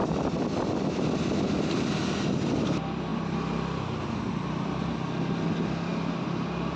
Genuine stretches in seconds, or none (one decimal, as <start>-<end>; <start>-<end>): 0.0-6.8